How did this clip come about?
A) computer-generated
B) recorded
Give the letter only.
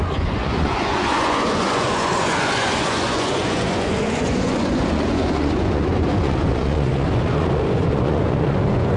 A